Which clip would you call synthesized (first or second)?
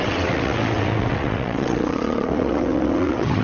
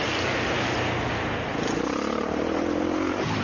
first